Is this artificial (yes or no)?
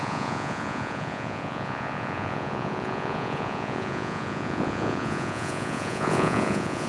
yes